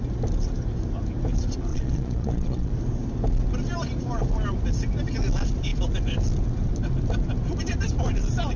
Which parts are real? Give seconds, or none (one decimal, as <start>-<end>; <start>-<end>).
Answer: 0.0-1.7; 2.7-8.6